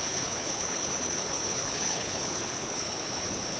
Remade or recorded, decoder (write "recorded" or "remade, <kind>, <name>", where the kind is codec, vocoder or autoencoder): remade, codec, HILCodec